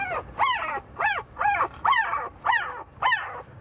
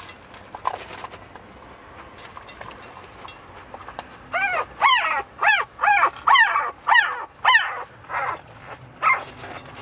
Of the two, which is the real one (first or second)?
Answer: second